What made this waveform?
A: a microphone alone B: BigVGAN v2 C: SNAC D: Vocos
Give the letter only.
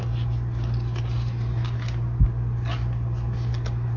A